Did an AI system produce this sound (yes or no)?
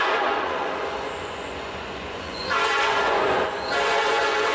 yes